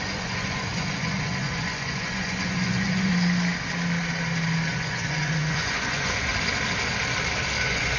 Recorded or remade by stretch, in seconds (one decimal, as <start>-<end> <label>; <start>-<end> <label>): 0.0-3.1 remade; 3.1-4.7 recorded; 4.7-6.3 remade; 6.3-7.6 recorded; 7.6-8.0 remade